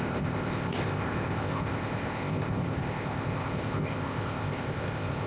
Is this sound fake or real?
fake